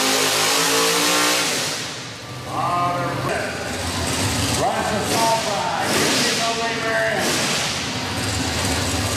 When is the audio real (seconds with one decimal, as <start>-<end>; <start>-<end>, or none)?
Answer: 0.0-9.2